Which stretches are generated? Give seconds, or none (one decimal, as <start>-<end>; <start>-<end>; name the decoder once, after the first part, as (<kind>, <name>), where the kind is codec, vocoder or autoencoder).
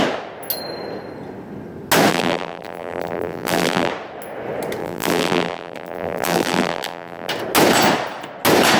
2.1-3.9 (vocoder, BigVGAN v2); 4.8-7.3